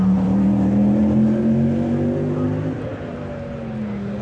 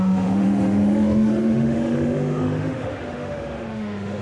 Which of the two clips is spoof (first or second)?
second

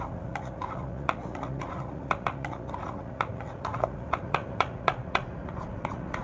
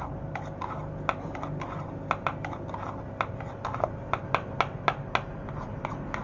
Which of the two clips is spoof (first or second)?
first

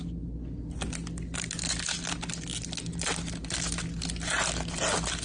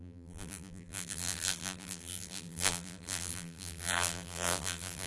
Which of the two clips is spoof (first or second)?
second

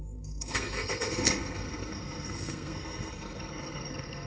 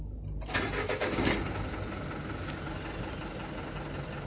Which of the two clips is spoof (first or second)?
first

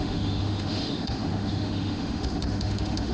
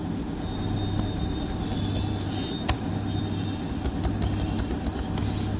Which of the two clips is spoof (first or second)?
first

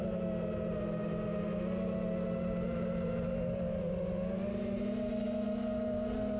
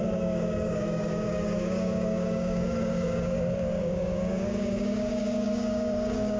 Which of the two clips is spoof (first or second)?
second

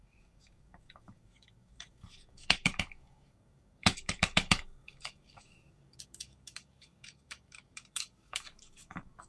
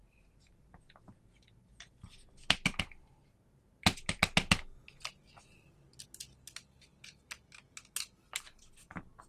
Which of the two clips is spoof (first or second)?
first